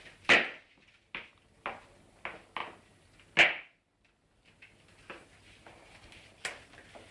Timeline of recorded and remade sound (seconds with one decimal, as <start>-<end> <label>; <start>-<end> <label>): 0.0-7.1 recorded